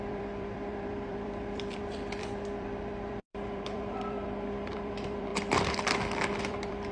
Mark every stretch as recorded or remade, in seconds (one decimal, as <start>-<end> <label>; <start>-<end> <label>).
0.0-5.3 remade; 5.3-6.4 recorded; 6.4-6.9 remade

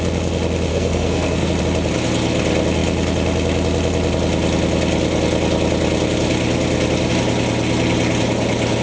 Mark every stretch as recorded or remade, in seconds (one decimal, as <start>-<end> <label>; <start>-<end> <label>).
0.0-0.7 recorded; 0.7-1.5 remade; 1.5-8.8 recorded

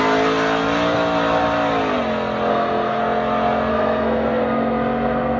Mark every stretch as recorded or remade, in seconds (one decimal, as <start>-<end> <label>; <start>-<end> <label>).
0.0-2.5 recorded; 2.5-3.0 remade; 3.0-3.7 recorded; 3.7-5.4 remade

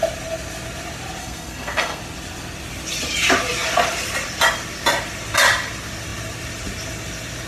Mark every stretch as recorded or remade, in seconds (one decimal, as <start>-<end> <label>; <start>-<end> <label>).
0.0-1.2 recorded; 1.2-2.0 remade; 2.0-7.5 recorded

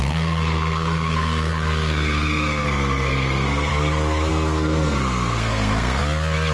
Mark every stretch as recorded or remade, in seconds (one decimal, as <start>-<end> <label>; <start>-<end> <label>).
0.0-3.7 remade; 3.7-4.3 recorded; 4.3-6.0 remade; 6.0-6.5 recorded

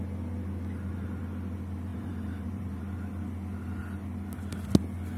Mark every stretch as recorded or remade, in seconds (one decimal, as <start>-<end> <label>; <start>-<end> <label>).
0.0-1.9 recorded; 1.9-2.8 remade; 2.8-5.2 recorded

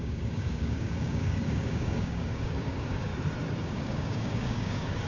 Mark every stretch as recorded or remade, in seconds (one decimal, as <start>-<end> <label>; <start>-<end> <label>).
0.0-3.1 remade; 3.1-3.6 recorded; 3.6-5.1 remade

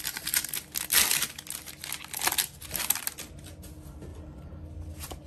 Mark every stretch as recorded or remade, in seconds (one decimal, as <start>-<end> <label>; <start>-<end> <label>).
0.0-4.1 recorded; 4.1-4.7 remade; 4.7-5.3 recorded